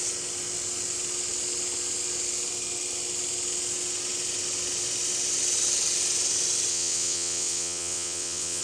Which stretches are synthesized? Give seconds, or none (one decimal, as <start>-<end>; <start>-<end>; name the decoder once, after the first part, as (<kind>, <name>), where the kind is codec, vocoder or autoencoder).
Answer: 6.7-8.6 (vocoder, WaveNeXt)